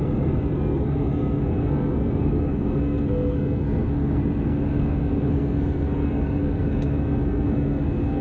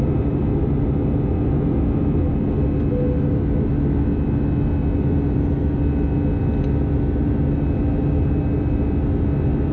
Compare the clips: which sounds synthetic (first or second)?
first